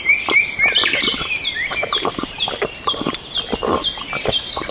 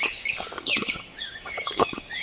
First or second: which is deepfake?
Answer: second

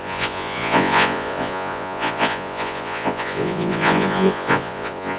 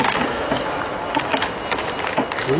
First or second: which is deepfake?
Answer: first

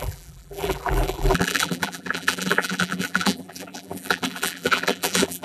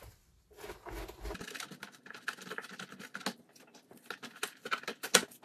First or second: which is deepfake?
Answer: first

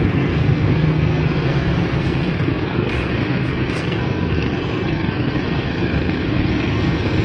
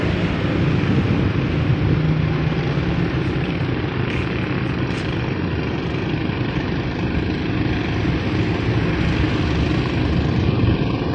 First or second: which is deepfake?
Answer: first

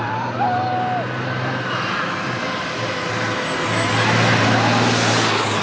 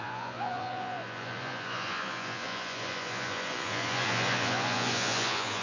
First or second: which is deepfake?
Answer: second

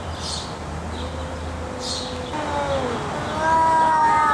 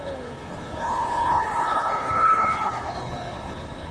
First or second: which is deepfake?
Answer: second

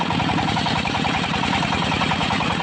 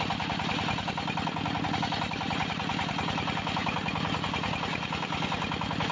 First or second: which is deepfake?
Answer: first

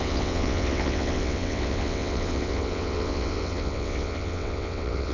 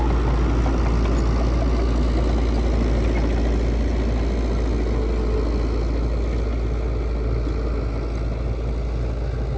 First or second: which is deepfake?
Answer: first